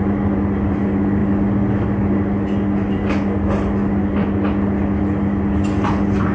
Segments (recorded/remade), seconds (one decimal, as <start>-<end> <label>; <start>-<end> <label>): 0.0-6.3 recorded